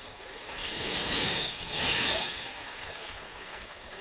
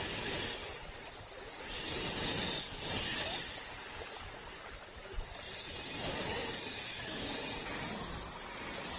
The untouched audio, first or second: second